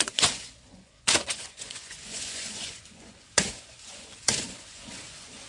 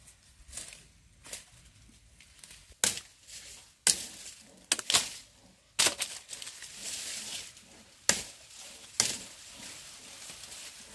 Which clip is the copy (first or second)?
first